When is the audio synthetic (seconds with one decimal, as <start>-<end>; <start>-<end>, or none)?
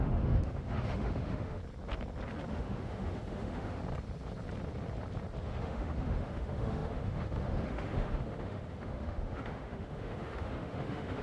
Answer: 0.0-1.6; 2.5-3.8; 5.4-11.2